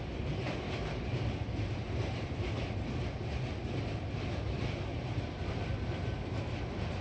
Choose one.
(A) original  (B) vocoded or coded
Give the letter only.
A